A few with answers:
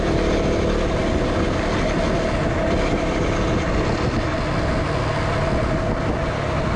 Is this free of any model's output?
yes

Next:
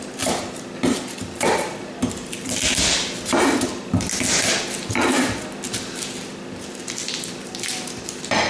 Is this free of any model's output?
yes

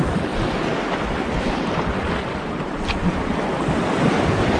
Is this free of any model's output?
yes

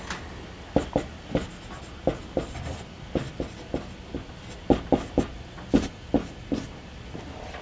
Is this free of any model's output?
yes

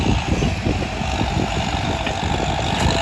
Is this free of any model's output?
yes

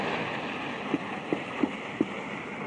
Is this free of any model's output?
yes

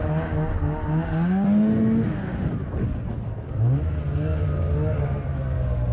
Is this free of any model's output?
yes